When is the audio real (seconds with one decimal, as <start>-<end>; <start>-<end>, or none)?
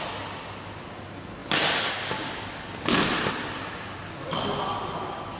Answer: 0.0-5.4